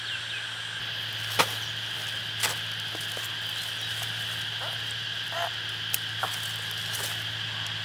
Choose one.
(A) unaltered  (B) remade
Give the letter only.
A